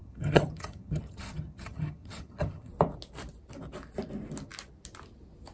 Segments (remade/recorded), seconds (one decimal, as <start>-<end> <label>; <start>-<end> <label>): 0.0-2.7 remade; 2.7-5.5 recorded